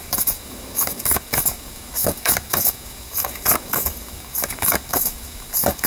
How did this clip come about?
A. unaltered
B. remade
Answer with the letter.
B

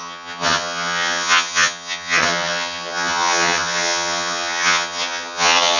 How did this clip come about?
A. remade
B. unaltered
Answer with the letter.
A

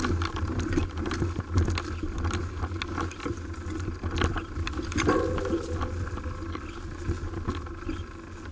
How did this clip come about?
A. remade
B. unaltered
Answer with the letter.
B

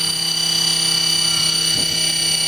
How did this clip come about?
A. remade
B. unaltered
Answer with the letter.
B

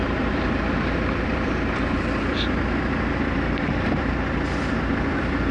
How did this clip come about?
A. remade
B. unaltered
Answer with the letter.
A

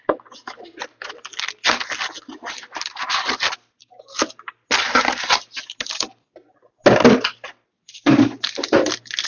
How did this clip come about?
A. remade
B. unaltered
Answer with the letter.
B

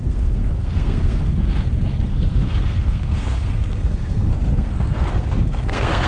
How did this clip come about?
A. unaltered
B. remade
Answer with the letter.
B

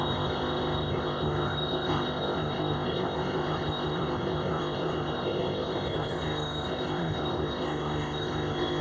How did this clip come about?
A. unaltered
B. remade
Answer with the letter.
B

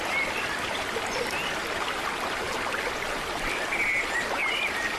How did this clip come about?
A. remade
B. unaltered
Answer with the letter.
B